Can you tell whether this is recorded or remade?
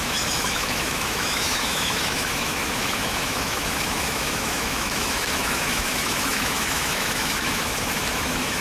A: remade